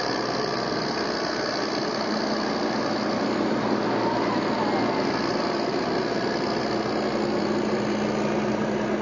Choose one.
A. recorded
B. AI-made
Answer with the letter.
A